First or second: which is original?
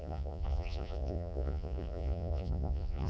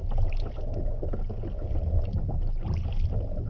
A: second